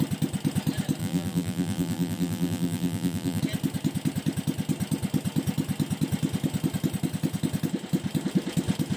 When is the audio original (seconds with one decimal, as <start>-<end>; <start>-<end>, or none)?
0.0-1.0; 3.4-9.0